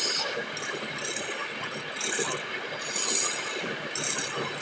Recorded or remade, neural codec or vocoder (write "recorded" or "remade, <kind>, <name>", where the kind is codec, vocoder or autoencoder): recorded